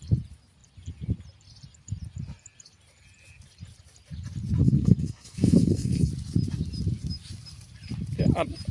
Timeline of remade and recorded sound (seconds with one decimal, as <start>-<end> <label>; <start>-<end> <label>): 0.0-4.6 recorded; 4.6-6.1 remade; 6.1-8.7 recorded